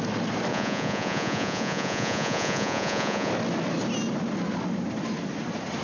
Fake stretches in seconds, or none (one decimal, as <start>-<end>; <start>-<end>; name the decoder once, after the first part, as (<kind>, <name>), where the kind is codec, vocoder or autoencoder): 0.5-3.3 (vocoder, Vocos)